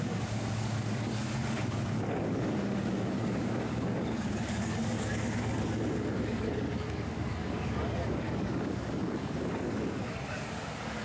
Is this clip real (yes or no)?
no